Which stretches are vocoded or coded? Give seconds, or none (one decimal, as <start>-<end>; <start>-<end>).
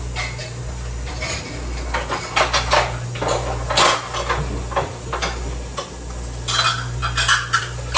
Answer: none